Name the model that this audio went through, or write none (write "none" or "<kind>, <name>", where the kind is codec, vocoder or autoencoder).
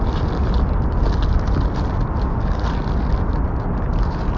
none